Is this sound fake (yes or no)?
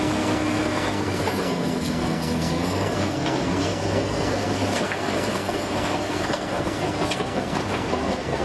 yes